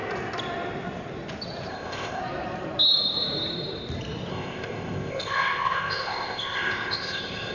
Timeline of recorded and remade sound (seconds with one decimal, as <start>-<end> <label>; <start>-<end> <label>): 0.0-1.7 recorded; 1.7-2.2 remade; 2.2-4.3 recorded; 4.3-7.5 remade